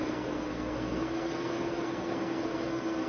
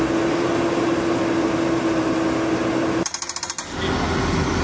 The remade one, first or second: first